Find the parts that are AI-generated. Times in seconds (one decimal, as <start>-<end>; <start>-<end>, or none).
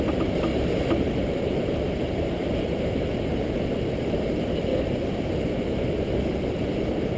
0.5-2.7